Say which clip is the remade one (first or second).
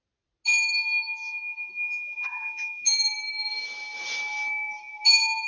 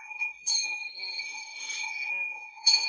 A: second